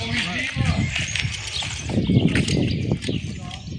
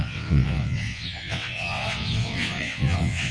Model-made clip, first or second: second